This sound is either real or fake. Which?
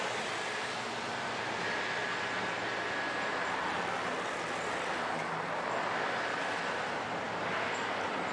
real